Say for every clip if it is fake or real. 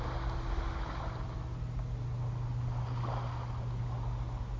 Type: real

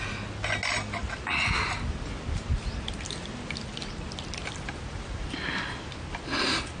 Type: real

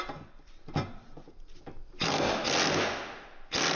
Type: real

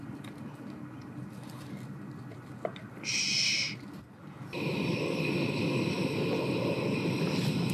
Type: real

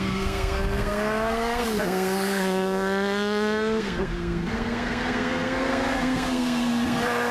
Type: fake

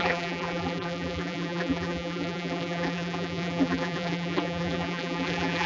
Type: fake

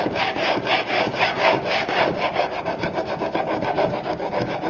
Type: fake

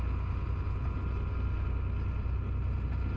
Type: real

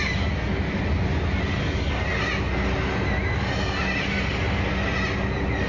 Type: real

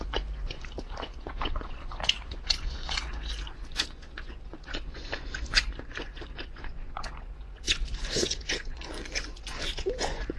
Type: fake